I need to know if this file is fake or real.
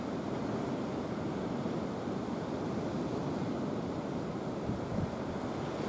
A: real